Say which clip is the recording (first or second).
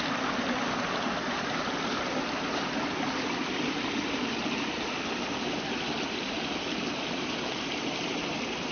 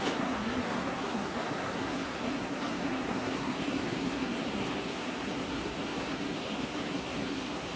first